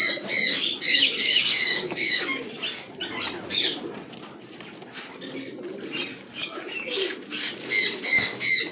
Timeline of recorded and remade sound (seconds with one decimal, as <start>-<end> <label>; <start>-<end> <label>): 0.0-0.5 recorded; 0.5-2.4 remade; 2.4-6.1 recorded; 6.1-7.5 remade; 7.5-8.7 recorded